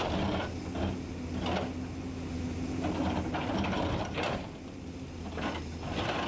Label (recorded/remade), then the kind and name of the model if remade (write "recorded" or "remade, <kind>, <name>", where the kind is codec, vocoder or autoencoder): recorded